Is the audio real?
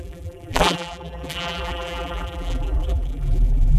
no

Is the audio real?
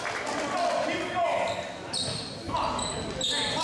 yes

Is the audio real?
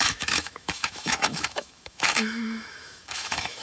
no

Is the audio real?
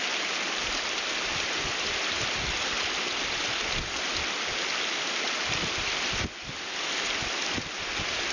yes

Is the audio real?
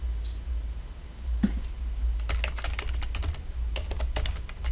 yes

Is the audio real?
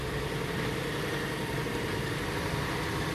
no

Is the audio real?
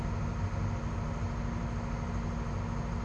yes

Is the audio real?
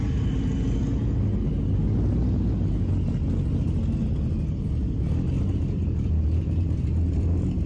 yes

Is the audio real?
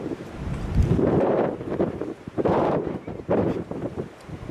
no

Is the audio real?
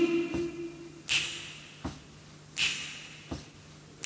yes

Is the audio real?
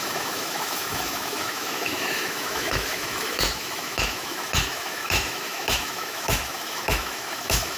no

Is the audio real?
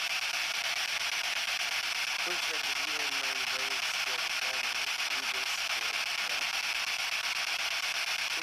yes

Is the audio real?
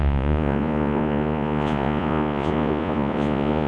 no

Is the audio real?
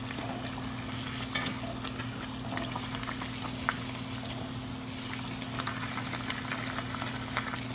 yes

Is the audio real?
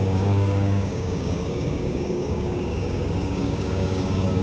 no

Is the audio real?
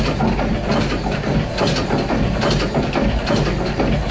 yes